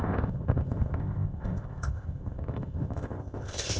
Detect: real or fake fake